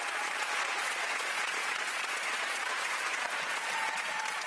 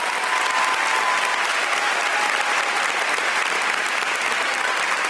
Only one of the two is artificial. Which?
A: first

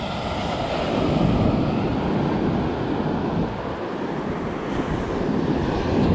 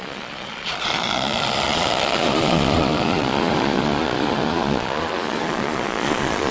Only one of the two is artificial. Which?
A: second